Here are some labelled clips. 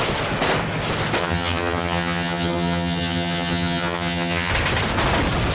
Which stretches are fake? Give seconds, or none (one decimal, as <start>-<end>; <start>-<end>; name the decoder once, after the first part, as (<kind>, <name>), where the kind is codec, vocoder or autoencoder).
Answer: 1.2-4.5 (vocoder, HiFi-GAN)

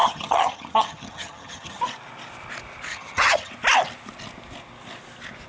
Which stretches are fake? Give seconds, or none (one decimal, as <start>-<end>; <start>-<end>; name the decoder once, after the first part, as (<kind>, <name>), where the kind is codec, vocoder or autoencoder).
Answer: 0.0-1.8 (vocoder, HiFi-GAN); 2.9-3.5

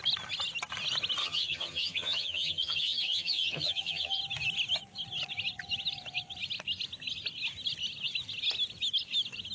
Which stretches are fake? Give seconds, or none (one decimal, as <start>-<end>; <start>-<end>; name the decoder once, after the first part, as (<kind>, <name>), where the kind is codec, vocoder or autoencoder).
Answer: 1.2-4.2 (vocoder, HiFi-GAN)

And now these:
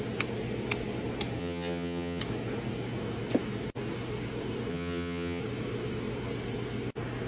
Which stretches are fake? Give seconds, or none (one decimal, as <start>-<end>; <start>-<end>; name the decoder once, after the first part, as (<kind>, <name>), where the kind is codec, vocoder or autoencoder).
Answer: 1.4-2.2 (vocoder, HiFi-GAN); 4.7-5.4